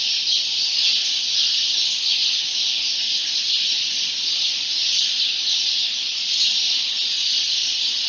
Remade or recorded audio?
recorded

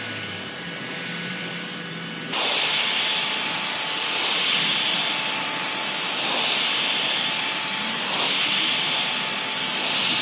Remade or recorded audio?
recorded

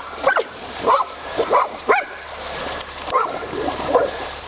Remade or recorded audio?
remade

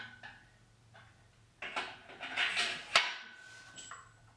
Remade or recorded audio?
recorded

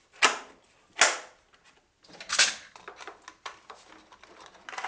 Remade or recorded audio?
recorded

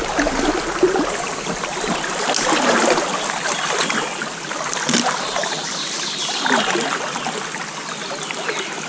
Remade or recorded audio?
recorded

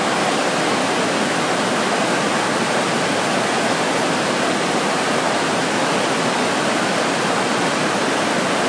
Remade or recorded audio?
recorded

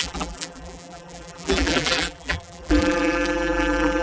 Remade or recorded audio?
remade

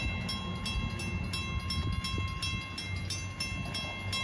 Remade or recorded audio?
recorded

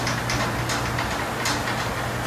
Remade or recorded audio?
recorded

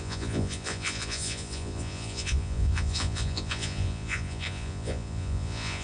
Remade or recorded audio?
remade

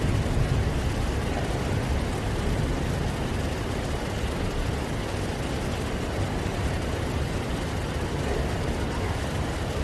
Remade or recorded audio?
recorded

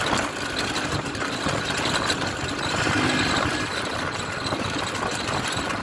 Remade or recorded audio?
recorded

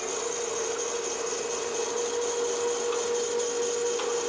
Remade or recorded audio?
recorded